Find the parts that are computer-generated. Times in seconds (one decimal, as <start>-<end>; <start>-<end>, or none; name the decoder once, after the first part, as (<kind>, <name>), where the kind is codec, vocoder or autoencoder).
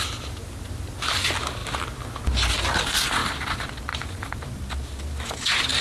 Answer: none